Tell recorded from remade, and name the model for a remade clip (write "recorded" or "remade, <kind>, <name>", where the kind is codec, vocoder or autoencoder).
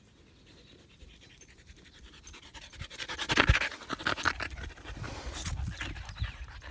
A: recorded